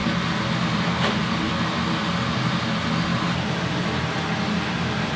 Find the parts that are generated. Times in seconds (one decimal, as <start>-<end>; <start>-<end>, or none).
none